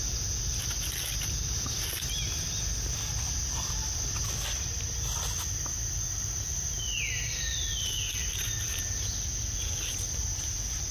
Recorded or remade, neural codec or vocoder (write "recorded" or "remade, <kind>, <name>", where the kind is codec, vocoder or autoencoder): recorded